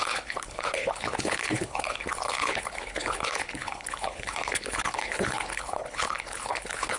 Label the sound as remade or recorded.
remade